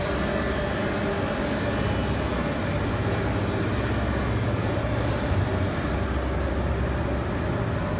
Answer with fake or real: real